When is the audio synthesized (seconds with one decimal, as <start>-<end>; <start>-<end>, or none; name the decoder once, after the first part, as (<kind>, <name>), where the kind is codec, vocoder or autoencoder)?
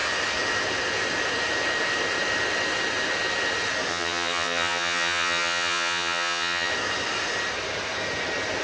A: 3.9-6.7 (vocoder, HiFi-GAN)